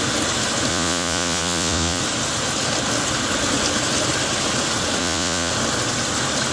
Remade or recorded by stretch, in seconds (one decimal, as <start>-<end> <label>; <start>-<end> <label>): 0.0-0.7 recorded; 0.7-2.0 remade; 2.0-5.0 recorded; 5.0-5.5 remade; 5.5-6.5 recorded